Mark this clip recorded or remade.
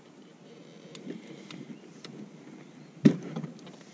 recorded